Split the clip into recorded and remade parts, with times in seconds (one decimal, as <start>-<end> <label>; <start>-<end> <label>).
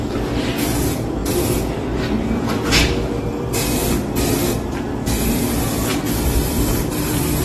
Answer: 0.0-3.6 remade; 3.6-6.1 recorded; 6.1-7.4 remade